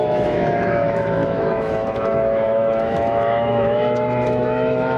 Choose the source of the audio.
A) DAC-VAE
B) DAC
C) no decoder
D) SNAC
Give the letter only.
A